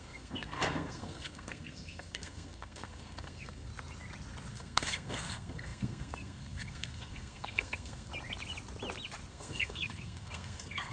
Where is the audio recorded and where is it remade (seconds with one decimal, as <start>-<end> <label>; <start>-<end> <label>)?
0.0-3.7 remade; 3.7-4.5 recorded; 4.5-8.1 remade; 8.1-9.3 recorded; 9.3-10.9 remade